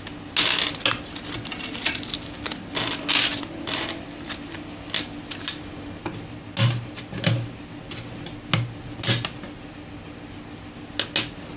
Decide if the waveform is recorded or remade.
recorded